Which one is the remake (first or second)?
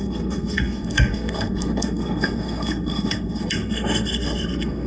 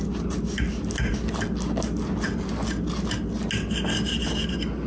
first